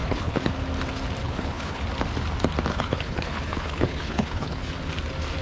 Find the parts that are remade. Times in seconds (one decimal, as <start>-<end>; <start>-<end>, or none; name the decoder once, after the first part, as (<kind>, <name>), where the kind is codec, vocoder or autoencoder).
0.0-0.5 (codec, HILCodec); 1.2-1.8; 2.7-4.7